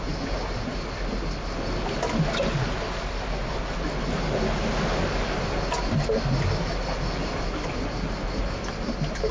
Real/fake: real